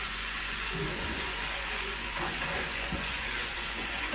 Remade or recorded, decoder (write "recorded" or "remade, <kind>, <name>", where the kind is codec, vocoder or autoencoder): remade, vocoder, Vocos